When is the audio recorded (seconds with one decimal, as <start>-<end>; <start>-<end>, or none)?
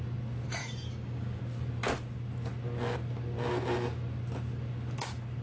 0.0-0.6; 1.4-5.4